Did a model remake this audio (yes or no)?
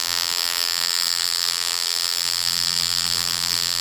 yes